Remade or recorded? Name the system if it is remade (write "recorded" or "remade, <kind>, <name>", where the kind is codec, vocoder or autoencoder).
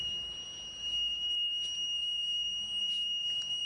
remade, vocoder, BigVGAN v2